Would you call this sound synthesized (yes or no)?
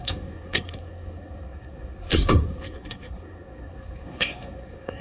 yes